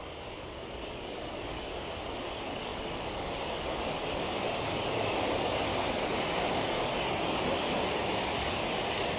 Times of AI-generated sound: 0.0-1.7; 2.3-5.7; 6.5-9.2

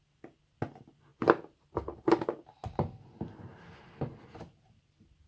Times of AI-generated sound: none

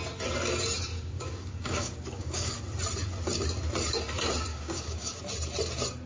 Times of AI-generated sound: 0.9-2.6; 4.5-5.2

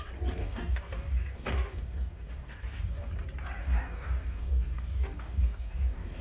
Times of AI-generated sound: 0.4-3.1; 3.6-6.2

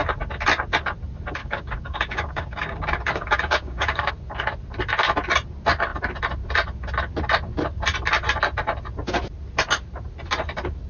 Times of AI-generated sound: 1.4-4.1

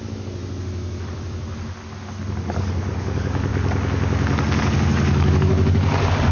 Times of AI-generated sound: 0.0-0.4; 2.3-3.5; 4.6-6.3

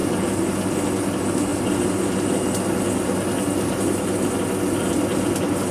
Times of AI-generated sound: none